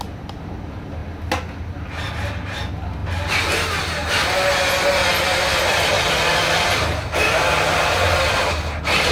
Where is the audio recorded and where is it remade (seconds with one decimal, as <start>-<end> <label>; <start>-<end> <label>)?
0.0-9.1 recorded